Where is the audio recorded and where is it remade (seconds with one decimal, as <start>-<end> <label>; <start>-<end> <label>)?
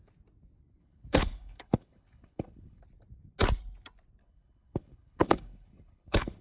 0.0-0.8 recorded; 0.8-2.8 remade; 2.8-4.2 recorded; 4.2-6.4 remade